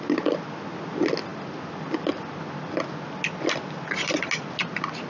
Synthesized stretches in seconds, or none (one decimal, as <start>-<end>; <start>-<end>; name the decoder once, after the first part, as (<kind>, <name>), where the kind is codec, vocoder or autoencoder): none